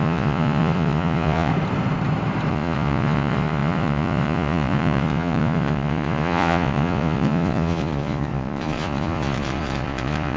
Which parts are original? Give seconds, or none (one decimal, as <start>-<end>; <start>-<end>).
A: 1.5-2.5

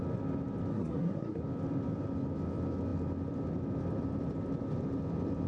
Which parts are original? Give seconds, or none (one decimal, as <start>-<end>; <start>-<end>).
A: 0.0-0.7; 1.4-5.5

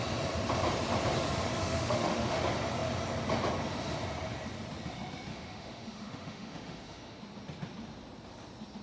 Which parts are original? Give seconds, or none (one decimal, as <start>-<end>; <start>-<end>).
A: 0.0-1.6; 2.4-5.3; 7.2-8.8